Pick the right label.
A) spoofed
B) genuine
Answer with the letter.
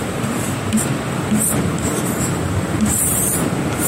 A